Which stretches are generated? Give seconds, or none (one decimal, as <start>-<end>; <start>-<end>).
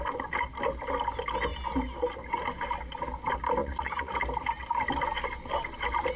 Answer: 3.6-4.1